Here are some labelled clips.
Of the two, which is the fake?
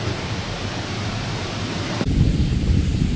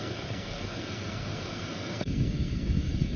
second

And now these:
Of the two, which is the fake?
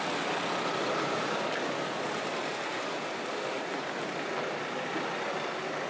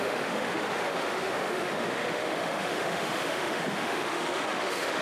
second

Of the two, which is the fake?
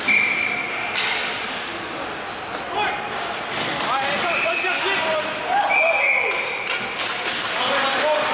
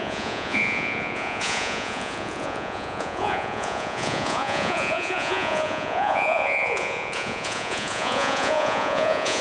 second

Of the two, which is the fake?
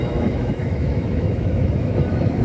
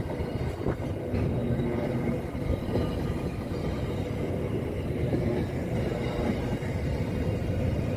first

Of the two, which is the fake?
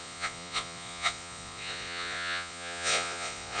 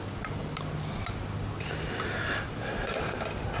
first